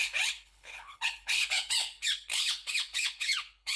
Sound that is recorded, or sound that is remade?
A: remade